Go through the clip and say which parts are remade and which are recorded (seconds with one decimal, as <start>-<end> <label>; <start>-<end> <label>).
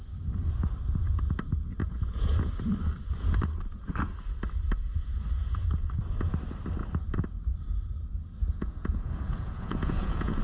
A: 0.0-1.8 recorded; 1.8-2.4 remade; 2.4-8.4 recorded; 8.4-10.4 remade